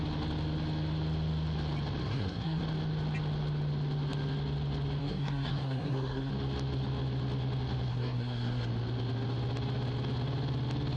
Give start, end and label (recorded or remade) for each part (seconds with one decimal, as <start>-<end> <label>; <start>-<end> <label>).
0.0-2.0 recorded; 2.0-2.6 remade; 2.6-5.0 recorded; 5.0-6.3 remade; 6.3-7.9 recorded; 7.9-8.7 remade; 8.7-11.0 recorded